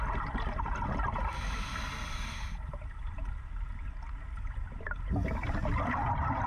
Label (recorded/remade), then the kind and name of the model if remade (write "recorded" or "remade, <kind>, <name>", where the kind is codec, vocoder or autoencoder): recorded